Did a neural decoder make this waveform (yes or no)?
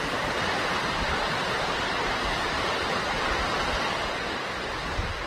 no